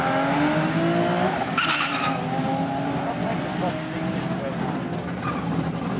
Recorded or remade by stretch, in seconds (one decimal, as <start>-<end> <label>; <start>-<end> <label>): 0.0-2.5 recorded; 2.5-3.1 remade; 3.1-6.0 recorded